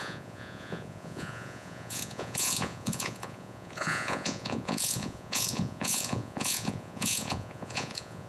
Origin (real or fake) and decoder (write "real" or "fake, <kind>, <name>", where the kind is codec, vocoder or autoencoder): fake, vocoder, Vocos